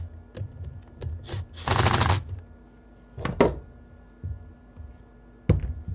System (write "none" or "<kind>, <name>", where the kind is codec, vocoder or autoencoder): none